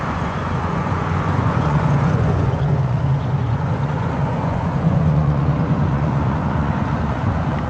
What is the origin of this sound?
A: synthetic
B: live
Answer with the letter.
A